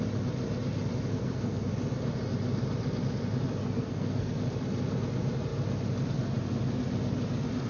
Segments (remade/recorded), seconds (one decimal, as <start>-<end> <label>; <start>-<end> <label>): 0.0-1.1 recorded; 1.1-1.7 remade; 1.7-3.6 recorded; 3.6-4.4 remade; 4.4-7.7 recorded